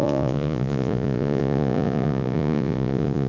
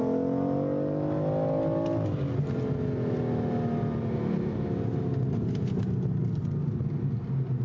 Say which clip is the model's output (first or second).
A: first